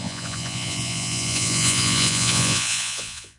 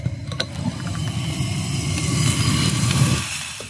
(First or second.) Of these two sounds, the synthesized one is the first